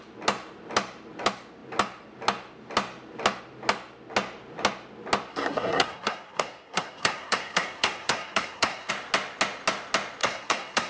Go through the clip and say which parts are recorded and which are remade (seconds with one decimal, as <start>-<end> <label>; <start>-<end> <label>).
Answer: 0.0-5.3 recorded; 5.3-8.9 remade; 8.9-10.2 recorded; 10.2-10.9 remade